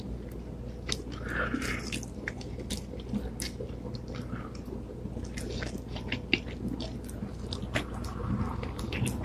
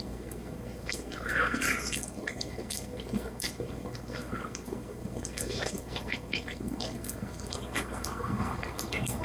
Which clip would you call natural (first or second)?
first